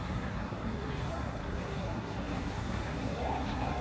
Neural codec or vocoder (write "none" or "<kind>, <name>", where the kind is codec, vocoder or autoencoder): codec, SNAC